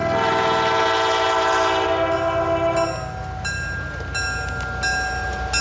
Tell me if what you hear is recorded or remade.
recorded